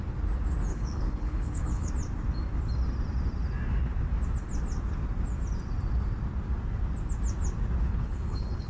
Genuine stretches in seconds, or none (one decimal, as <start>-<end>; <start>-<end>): 0.0-0.7; 1.9-7.8